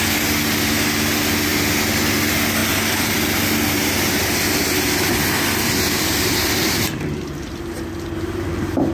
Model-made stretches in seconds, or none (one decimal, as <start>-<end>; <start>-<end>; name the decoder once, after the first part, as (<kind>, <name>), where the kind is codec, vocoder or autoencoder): none